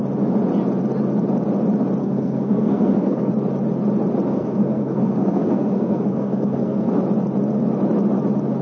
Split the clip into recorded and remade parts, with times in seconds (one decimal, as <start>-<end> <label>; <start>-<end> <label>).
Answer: 0.0-2.0 recorded; 2.0-3.3 remade; 3.3-4.3 recorded; 4.3-6.9 remade; 6.9-8.6 recorded